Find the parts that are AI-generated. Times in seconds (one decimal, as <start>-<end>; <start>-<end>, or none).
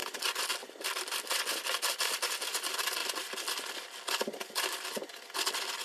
none